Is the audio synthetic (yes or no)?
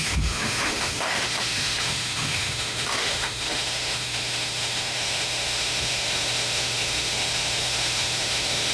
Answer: yes